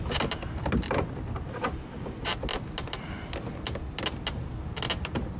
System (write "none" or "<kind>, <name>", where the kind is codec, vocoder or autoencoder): none